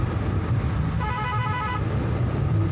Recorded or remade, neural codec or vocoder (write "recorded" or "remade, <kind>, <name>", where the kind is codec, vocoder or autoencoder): remade, vocoder, BigVGAN v2